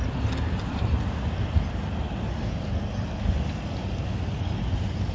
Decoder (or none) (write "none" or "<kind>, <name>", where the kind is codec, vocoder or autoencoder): none